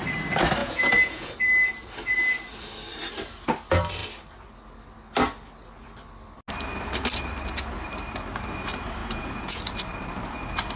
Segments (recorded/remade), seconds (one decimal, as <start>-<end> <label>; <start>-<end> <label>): 0.0-0.6 recorded; 0.6-1.3 remade; 1.3-9.0 recorded; 9.0-9.6 remade; 9.6-10.8 recorded